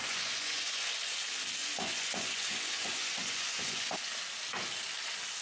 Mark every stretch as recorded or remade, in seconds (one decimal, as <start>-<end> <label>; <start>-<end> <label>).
0.0-0.9 remade; 0.9-1.6 recorded; 1.6-3.9 remade; 3.9-5.4 recorded

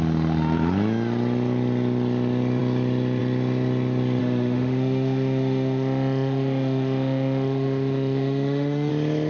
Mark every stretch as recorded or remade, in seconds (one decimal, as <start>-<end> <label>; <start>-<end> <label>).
0.0-4.2 recorded; 4.2-8.9 remade; 8.9-9.3 recorded

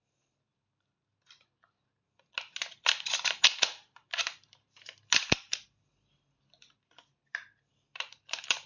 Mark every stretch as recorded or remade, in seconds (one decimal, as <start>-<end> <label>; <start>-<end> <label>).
0.0-1.1 remade; 1.1-4.5 recorded; 4.5-8.7 remade

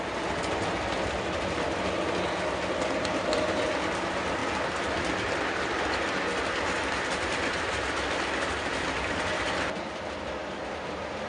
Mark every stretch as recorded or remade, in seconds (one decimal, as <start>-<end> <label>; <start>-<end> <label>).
0.0-11.3 recorded

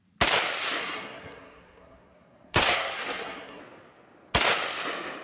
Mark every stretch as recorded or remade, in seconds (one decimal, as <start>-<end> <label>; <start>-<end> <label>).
0.0-0.8 recorded; 0.8-3.6 remade; 3.6-5.2 recorded